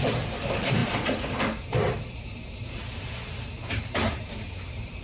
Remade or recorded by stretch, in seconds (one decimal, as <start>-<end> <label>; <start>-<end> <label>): 0.0-5.0 remade